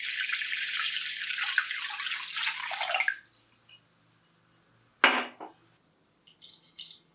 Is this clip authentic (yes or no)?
yes